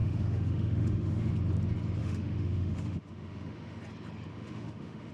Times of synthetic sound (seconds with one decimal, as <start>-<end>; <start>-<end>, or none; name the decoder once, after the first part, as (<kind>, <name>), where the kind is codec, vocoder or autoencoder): 0.0-1.3 (autoencoder, DAC-VAE); 2.0-3.8; 4.3-5.1